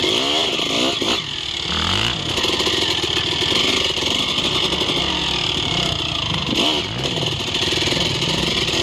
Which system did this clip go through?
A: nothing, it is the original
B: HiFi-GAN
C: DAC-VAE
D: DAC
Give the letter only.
A